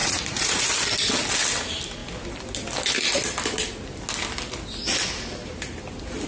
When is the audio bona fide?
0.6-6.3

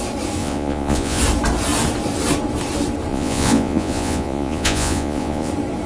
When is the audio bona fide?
0.0-0.4; 1.2-3.1; 5.5-5.9

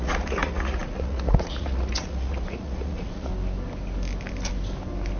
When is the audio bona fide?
3.3-5.2

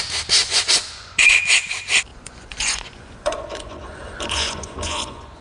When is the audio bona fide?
0.0-0.4; 1.4-2.1

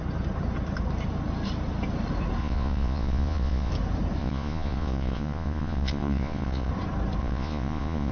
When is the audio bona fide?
0.0-2.4; 3.7-4.2; 6.7-7.2

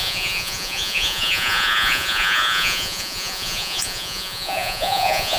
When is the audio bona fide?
none

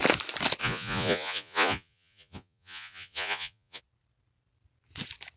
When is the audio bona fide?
0.0-0.6; 3.8-5.4

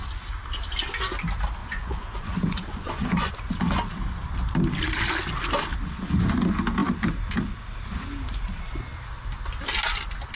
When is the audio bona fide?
0.0-1.6; 3.3-10.4